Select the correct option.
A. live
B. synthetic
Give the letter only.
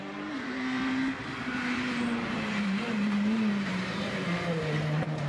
B